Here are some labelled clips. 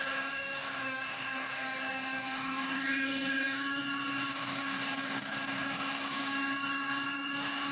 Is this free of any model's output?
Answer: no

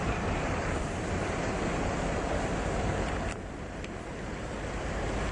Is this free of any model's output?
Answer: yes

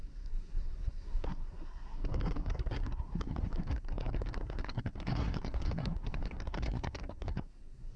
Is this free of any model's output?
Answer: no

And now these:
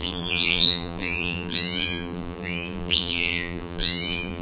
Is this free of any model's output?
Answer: no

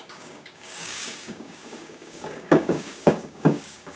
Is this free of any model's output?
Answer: no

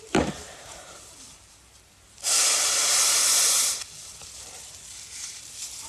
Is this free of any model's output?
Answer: no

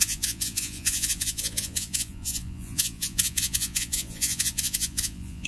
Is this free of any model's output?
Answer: no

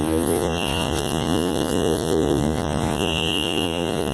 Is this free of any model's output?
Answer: no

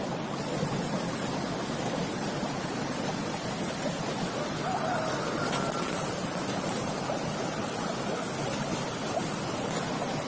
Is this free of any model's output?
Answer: yes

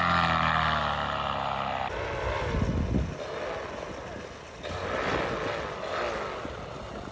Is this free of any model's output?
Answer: yes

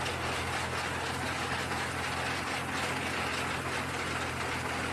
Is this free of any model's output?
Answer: yes